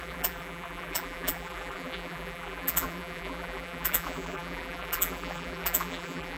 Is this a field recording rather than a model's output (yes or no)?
no